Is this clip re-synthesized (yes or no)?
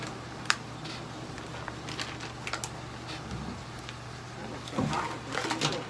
no